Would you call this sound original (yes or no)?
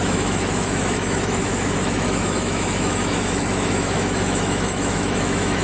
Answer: no